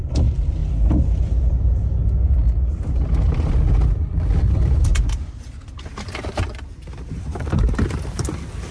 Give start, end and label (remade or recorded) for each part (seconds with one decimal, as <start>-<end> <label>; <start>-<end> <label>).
0.0-2.0 remade; 2.0-4.5 recorded; 4.5-4.9 remade; 4.9-6.3 recorded; 6.3-8.7 remade